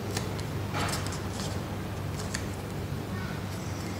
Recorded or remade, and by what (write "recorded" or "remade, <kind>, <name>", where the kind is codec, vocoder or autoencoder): recorded